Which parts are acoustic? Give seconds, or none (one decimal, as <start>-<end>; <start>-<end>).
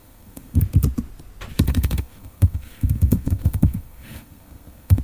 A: 0.6-1.7